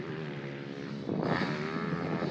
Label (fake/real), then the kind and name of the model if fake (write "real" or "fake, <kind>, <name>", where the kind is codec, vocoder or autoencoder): real